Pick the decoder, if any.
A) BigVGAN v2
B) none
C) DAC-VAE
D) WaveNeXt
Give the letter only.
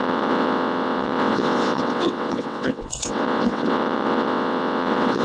D